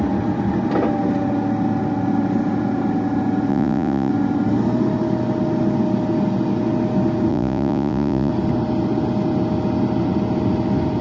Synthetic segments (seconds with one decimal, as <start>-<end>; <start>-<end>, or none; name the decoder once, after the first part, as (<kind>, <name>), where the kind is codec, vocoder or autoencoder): 3.5-4.1 (vocoder, Vocos); 7.3-8.3